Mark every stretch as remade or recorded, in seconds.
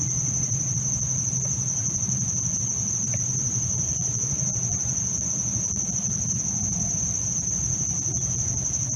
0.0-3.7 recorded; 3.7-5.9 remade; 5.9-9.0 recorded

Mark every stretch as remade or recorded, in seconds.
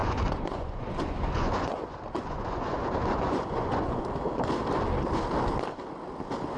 0.0-4.0 remade; 4.0-6.6 recorded